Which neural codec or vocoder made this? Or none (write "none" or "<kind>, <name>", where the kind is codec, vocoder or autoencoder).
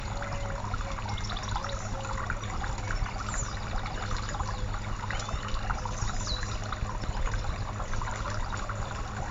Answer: none